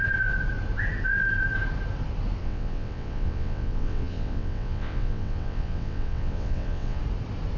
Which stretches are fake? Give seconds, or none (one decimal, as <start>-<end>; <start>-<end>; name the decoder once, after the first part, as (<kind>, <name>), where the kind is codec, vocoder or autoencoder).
2.4-7.0 (vocoder, WaveNeXt)